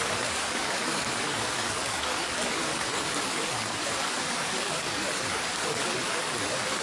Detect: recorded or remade remade